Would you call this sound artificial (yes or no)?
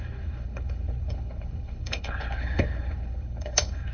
yes